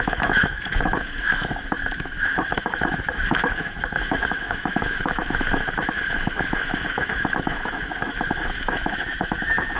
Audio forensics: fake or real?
fake